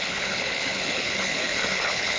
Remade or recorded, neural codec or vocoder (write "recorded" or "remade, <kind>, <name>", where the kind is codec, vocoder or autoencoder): remade, codec, HILCodec